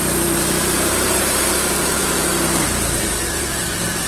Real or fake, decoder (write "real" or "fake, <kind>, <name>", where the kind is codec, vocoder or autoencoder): fake, vocoder, BigVGAN v2